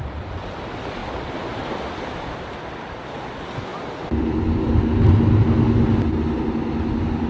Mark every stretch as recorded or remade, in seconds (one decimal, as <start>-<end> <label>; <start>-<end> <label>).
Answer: 0.0-7.3 recorded